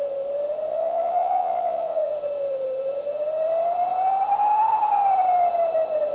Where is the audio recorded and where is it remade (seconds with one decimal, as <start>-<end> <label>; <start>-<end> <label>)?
0.0-0.7 recorded; 0.7-2.1 remade; 2.1-6.1 recorded